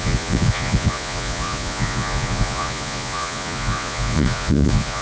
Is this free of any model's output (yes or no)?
no